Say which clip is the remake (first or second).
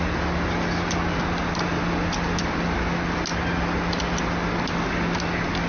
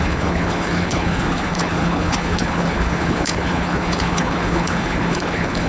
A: second